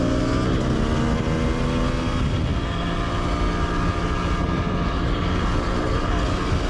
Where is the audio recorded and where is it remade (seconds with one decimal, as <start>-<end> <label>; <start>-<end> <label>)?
0.0-6.7 recorded